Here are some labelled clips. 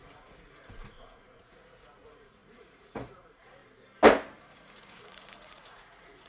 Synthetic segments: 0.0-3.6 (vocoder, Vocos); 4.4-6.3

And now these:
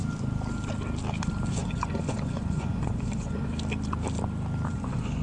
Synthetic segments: 1.5-3.5 (vocoder, Vocos); 4.7-5.2

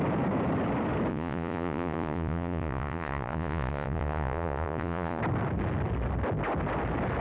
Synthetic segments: 1.1-5.2 (vocoder, Vocos)

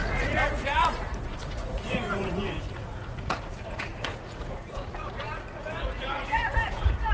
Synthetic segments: 0.0-7.1 (vocoder, Vocos)

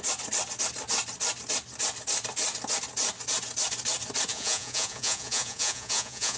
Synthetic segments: 4.3-6.4 (vocoder, Vocos)